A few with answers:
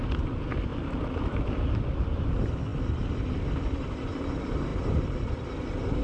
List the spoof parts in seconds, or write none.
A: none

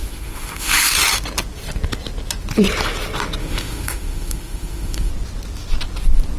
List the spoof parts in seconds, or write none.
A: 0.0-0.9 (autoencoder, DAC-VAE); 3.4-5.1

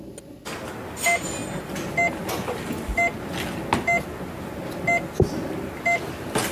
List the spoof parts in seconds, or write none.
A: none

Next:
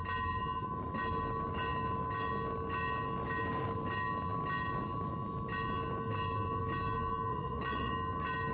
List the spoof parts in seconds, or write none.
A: 7.3-7.9 (vocoder, Vocos)

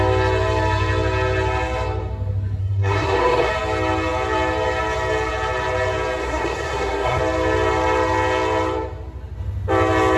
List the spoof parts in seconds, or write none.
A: 2.6-3.5 (codec, SNAC); 6.2-7.2

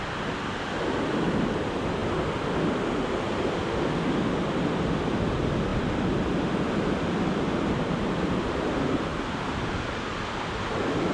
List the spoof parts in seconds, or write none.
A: none